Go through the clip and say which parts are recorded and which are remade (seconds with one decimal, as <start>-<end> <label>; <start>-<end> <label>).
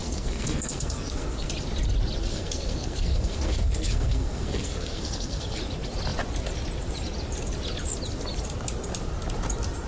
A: 0.0-1.5 remade; 1.5-2.3 recorded; 2.3-5.6 remade; 5.6-9.9 recorded